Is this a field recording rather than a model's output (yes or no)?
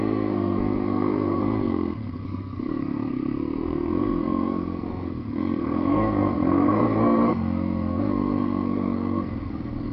no